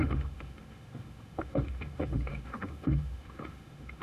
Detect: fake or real fake